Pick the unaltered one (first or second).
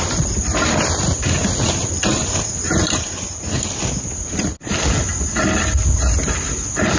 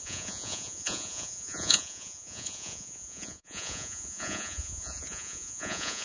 first